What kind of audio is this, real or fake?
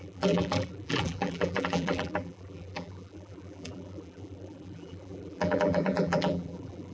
fake